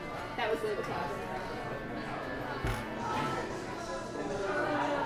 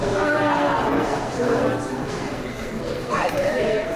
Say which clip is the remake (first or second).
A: second